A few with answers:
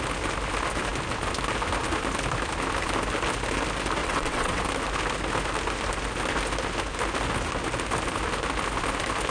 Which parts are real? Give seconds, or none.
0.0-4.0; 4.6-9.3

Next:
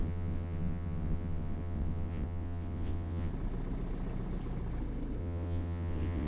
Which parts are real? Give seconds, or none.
3.3-5.2

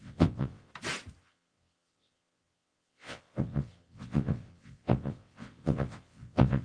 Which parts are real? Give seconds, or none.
0.7-1.2